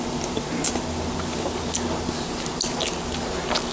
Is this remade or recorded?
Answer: recorded